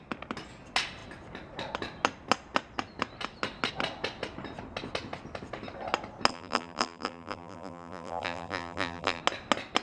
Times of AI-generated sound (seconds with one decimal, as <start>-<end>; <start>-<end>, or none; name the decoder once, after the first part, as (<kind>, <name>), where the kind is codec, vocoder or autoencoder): 6.3-9.2 (vocoder, BigVGAN v2)